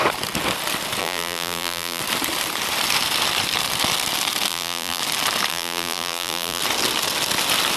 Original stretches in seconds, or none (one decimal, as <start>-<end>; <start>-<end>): 0.0-1.0; 2.0-4.5; 5.0-5.5; 6.6-7.8